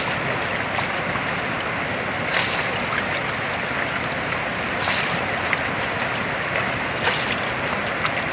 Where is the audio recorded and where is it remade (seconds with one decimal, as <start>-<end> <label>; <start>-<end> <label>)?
0.0-8.3 recorded